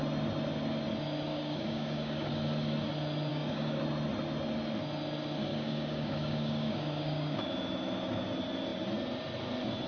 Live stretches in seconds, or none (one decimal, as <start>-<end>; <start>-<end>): 0.0-1.3; 2.3-3.3; 3.8-5.5; 7.5-9.9